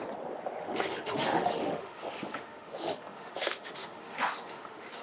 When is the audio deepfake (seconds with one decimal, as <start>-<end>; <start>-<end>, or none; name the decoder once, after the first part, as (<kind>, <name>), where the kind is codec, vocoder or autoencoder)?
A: 0.6-5.0 (autoencoder, DAC-VAE)